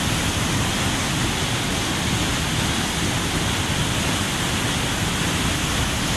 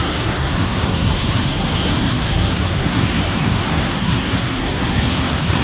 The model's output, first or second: second